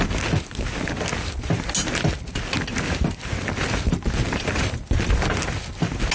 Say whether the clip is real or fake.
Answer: real